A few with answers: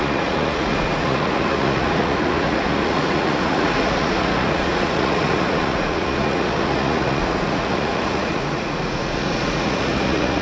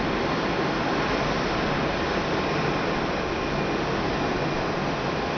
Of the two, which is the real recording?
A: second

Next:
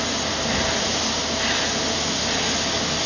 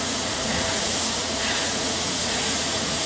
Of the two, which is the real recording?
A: first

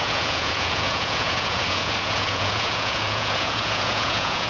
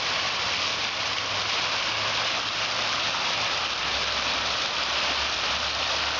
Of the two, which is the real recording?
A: second